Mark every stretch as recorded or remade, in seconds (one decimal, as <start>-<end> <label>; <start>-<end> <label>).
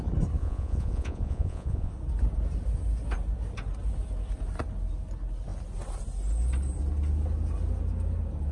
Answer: 0.0-0.4 recorded; 0.4-1.9 remade; 1.9-8.5 recorded